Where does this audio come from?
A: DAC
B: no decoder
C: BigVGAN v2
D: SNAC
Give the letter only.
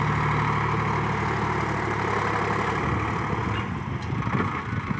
B